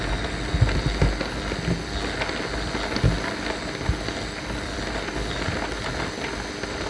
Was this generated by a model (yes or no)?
no